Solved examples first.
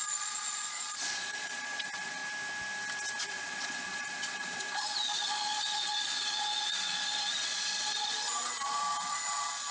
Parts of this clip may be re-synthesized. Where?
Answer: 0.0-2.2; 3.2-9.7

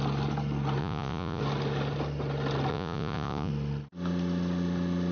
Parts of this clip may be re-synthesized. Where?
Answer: 0.8-1.4; 2.7-3.5